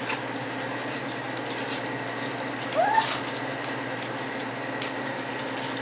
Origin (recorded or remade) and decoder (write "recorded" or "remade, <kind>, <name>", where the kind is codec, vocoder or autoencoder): recorded